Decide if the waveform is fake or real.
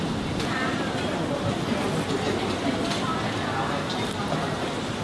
real